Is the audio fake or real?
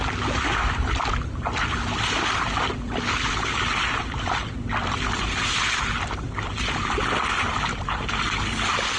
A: real